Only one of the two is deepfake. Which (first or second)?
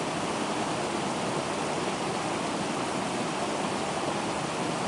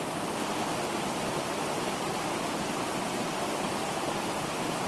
second